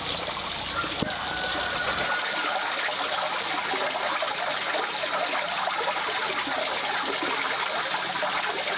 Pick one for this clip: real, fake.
real